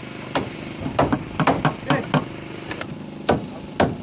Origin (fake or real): real